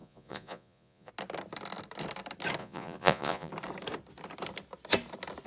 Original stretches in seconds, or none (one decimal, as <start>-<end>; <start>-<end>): 1.1-2.6; 3.5-5.5